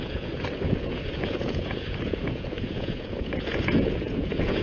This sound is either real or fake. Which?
fake